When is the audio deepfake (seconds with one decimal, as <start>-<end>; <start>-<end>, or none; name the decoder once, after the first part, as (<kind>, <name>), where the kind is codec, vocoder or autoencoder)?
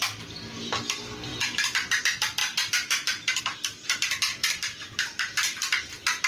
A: 1.3-2.0 (vocoder, BigVGAN v2); 2.4-3.4; 4.4-5.7